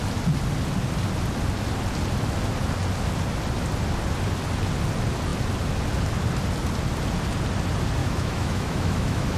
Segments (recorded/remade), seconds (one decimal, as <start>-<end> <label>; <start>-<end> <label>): 0.0-8.0 recorded; 8.0-9.4 remade